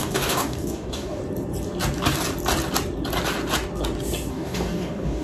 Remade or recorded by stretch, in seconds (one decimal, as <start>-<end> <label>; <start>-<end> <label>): 0.0-1.2 remade; 1.2-4.3 recorded; 4.3-5.2 remade